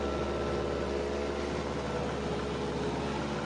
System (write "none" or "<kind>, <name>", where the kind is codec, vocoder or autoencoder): none